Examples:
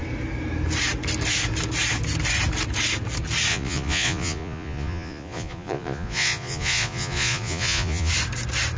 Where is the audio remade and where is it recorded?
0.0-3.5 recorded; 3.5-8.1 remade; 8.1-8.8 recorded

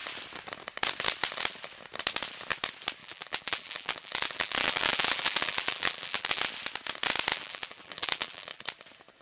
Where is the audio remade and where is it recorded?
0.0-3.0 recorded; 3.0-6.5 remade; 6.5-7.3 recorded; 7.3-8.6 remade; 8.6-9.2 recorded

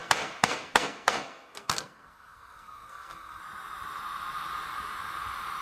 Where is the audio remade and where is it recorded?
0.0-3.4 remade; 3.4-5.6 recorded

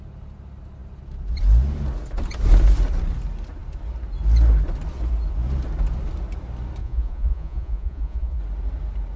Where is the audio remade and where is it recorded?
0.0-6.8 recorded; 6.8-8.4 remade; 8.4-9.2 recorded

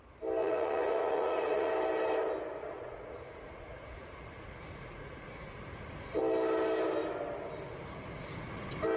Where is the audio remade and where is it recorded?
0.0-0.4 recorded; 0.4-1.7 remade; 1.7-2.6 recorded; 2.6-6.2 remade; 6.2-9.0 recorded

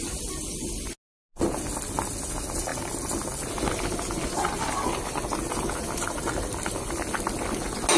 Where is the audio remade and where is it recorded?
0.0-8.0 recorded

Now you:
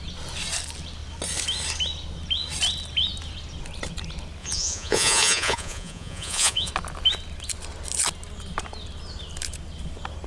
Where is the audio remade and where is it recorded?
0.0-4.4 recorded; 4.4-6.7 remade; 6.7-10.3 recorded